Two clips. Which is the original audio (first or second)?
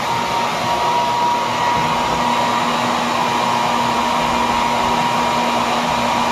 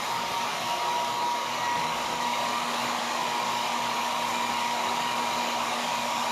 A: first